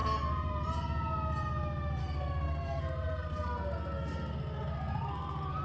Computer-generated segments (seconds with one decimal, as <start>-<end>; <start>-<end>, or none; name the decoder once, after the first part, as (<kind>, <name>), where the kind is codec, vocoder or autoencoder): 2.0-5.6 (codec, SNAC)

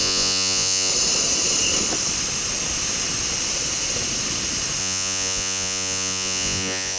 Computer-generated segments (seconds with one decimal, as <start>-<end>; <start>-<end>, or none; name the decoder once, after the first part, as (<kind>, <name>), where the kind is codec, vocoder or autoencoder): 0.0-0.9 (vocoder, Vocos); 4.8-7.0

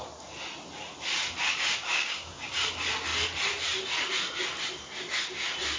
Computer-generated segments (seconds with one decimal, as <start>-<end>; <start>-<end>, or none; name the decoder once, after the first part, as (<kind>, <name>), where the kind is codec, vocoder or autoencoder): 1.9-2.5 (codec, DAC)

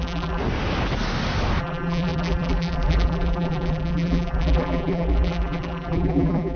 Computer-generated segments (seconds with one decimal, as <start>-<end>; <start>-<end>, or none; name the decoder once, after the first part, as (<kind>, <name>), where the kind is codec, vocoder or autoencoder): 0.0-0.4 (vocoder, BigVGAN v2); 1.6-6.6

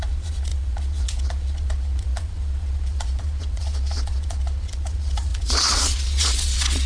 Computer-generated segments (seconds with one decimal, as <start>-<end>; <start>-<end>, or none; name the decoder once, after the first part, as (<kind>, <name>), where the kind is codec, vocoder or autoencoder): 0.0-6.9 (vocoder, Vocos)